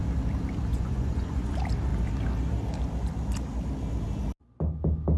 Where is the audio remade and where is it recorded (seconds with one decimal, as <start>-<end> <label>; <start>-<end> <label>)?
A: 0.0-0.7 recorded; 0.7-1.5 remade; 1.5-5.2 recorded